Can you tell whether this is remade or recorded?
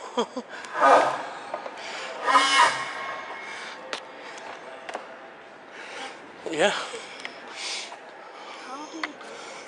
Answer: recorded